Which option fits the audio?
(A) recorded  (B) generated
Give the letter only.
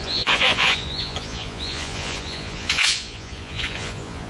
B